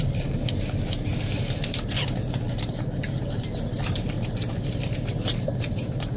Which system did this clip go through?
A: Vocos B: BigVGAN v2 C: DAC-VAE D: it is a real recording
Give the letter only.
B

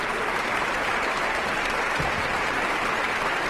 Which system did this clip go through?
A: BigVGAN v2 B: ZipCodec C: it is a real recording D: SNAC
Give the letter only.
A